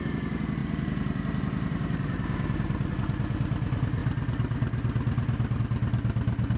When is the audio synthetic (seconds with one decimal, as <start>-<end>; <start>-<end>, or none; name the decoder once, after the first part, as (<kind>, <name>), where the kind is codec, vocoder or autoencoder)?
0.6-2.9 (vocoder, BigVGAN v2)